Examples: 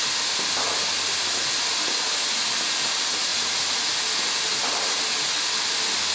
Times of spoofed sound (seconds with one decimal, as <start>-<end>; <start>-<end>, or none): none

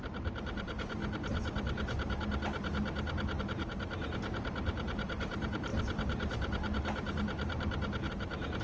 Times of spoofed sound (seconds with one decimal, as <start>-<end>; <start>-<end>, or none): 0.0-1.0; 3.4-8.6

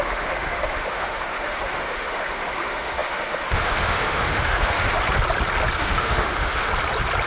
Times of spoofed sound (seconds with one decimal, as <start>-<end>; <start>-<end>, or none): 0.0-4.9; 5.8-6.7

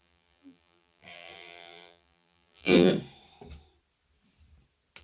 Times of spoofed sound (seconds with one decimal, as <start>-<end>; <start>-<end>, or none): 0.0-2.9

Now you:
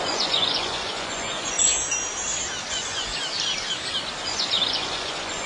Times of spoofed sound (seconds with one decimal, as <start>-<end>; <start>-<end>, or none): 0.0-1.7; 2.7-3.1; 4.2-5.5

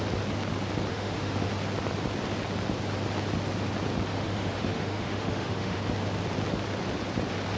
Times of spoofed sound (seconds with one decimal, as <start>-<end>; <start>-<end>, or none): 0.9-1.5; 4.1-5.8

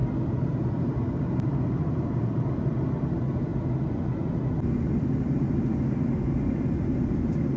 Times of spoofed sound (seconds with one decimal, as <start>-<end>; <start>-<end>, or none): 0.0-3.5; 7.0-7.6

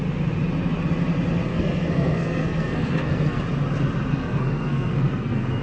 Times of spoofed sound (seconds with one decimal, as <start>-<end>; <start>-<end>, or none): 1.5-3.4; 4.1-5.6